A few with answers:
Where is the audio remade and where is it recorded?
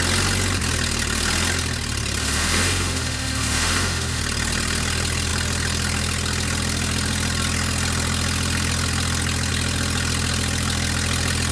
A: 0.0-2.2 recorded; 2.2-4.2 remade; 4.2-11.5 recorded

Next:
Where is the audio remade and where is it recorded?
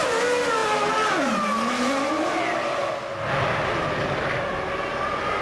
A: 0.0-5.4 recorded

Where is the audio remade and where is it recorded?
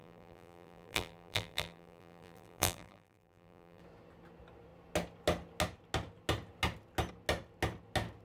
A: 0.0-3.8 remade; 3.8-8.2 recorded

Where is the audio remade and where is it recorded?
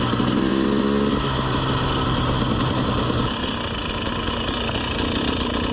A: 0.0-5.7 recorded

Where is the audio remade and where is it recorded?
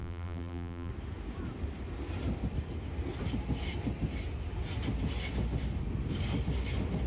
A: 0.0-0.9 remade; 0.9-7.1 recorded